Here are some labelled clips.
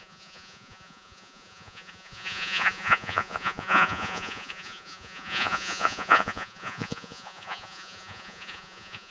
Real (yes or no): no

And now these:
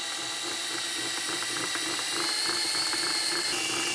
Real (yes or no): no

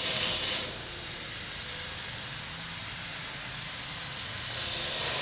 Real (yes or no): yes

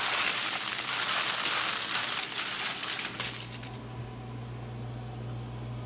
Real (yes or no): yes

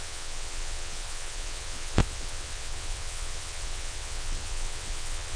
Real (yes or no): no